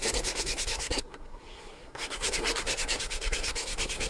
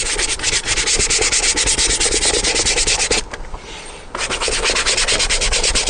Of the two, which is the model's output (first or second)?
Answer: first